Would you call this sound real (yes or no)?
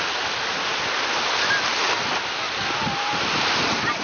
yes